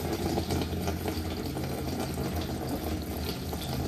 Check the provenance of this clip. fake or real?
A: real